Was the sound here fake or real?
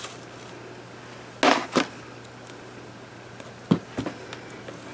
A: real